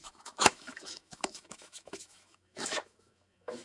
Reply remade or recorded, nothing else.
remade